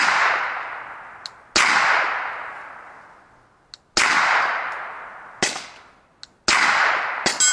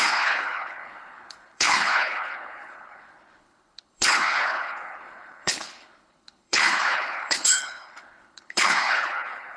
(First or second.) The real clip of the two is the first